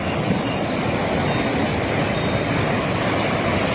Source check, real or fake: real